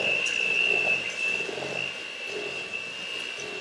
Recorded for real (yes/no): yes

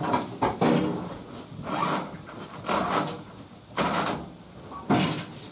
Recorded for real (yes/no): yes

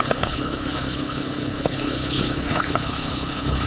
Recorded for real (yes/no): no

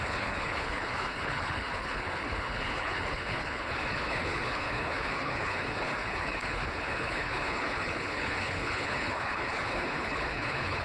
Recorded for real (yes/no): no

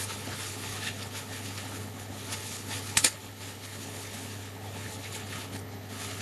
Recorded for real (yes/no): no